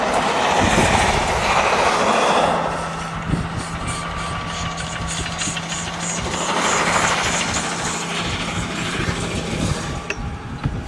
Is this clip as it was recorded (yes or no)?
yes